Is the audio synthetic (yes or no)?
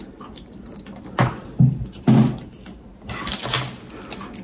no